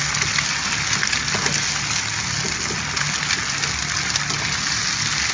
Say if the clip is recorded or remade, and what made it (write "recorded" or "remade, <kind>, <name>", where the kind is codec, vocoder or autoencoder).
recorded